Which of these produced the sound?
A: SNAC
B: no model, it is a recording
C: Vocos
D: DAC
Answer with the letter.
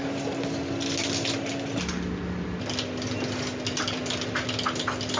B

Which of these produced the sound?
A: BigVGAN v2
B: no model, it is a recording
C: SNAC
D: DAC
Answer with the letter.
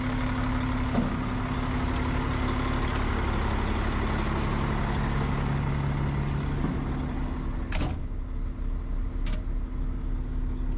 B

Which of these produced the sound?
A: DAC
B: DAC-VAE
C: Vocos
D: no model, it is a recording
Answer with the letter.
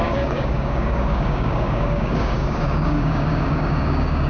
A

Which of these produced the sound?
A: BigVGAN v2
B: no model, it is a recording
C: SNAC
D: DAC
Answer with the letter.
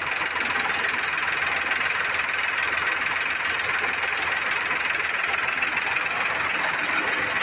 B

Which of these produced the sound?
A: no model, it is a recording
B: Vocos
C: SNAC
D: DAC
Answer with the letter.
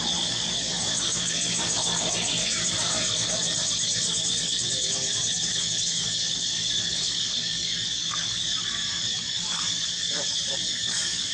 D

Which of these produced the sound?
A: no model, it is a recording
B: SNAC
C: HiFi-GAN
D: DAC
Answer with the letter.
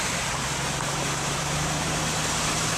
A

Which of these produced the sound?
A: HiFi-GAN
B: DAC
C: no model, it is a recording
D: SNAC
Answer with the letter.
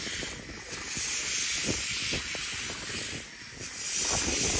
C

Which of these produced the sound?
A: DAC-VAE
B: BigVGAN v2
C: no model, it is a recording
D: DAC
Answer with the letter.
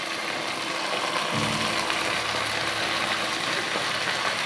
C